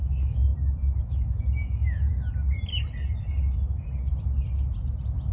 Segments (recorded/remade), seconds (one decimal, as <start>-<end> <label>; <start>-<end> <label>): 0.0-0.5 remade; 0.5-1.0 recorded; 1.0-2.1 remade; 2.1-5.3 recorded